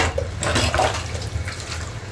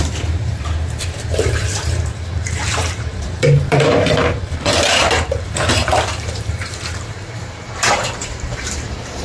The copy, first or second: second